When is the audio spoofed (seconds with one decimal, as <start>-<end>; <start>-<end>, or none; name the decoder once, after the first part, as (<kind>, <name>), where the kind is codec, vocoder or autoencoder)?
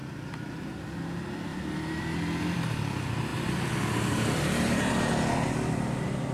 1.5-2.0 (vocoder, BigVGAN v2); 3.3-4.8